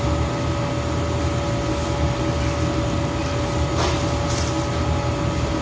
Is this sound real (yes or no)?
yes